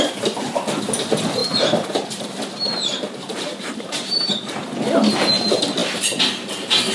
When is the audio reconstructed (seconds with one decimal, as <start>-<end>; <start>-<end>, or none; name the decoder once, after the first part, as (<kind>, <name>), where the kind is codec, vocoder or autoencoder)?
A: 1.4-1.9 (vocoder, BigVGAN v2); 2.9-4.6